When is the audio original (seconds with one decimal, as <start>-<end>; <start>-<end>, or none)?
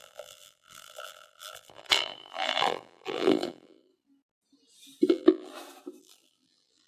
3.9-5.1; 5.5-6.0